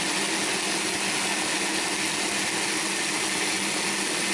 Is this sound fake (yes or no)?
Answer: no